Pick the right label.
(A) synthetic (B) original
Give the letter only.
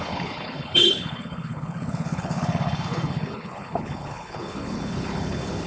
A